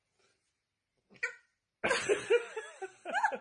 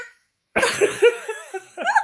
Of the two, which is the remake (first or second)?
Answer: second